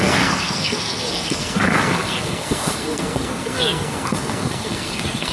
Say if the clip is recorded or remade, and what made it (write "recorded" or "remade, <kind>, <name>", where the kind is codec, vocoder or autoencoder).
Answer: remade, codec, SNAC